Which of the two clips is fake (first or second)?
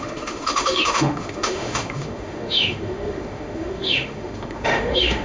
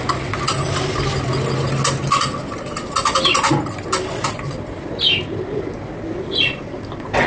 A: first